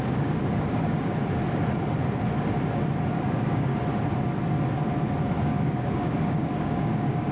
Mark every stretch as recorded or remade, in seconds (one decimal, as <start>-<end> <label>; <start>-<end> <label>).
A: 0.0-1.2 remade; 1.2-3.1 recorded; 3.1-3.7 remade; 3.7-5.4 recorded; 5.4-7.3 remade